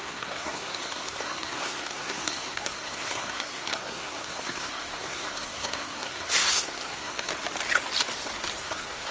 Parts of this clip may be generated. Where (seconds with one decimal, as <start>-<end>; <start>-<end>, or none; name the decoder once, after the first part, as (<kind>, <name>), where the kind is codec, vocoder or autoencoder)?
0.0-7.3 (codec, SNAC); 8.6-9.1